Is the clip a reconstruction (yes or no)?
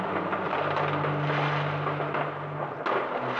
no